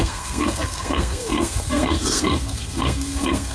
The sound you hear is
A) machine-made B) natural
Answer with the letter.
A